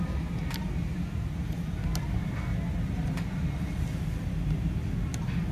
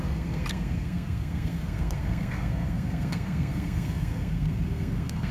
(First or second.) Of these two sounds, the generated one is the second